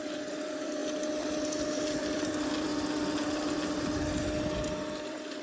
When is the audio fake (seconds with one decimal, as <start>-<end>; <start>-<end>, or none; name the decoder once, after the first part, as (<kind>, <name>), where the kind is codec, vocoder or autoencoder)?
0.0-0.8 (vocoder, BigVGAN v2); 2.0-2.7; 5.0-5.4